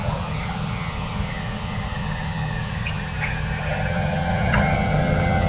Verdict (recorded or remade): remade